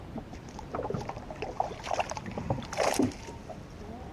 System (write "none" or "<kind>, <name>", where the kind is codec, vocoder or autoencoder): none